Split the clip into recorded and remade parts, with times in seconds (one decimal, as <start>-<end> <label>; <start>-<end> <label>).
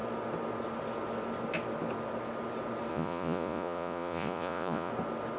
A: 0.0-2.9 recorded; 2.9-4.9 remade; 4.9-5.4 recorded